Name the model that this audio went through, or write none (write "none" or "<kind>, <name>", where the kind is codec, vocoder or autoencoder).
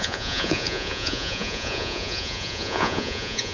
vocoder, Vocos